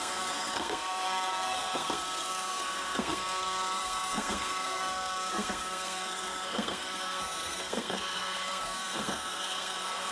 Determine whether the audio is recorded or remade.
remade